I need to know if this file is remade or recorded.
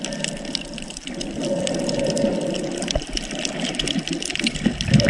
recorded